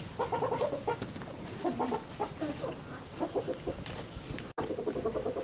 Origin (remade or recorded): recorded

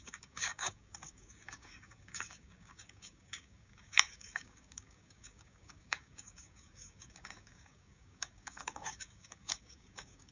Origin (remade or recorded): remade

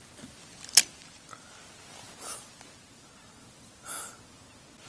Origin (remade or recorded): recorded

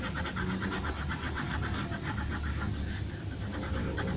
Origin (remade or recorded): recorded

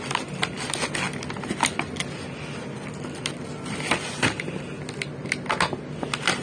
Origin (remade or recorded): recorded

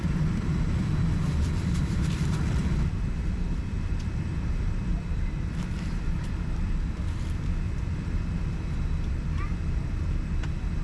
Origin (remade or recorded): remade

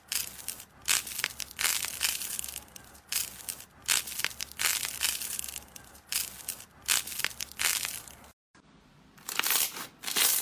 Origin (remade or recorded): remade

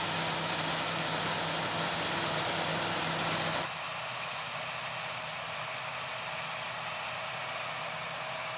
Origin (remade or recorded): recorded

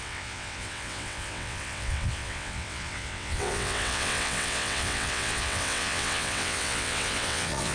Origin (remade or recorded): remade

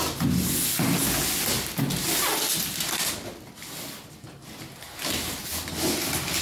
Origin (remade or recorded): recorded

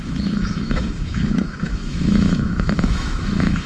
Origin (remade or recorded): remade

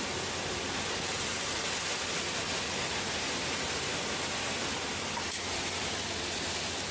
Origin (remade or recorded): recorded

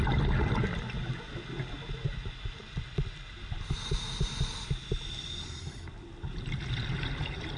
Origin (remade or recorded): recorded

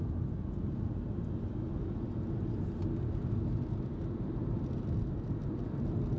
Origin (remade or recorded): recorded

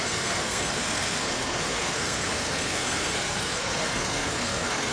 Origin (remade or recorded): remade